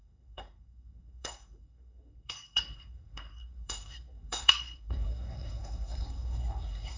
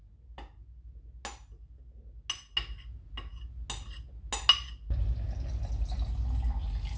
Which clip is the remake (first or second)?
first